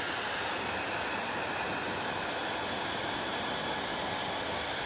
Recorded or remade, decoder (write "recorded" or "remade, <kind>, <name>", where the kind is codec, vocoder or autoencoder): recorded